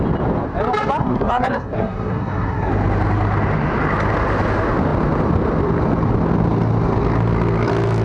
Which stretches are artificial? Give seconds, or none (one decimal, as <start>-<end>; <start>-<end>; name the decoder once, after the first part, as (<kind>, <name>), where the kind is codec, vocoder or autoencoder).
1.0-2.7 (codec, SNAC)